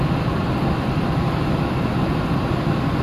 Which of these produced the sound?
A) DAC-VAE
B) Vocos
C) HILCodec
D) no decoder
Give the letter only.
D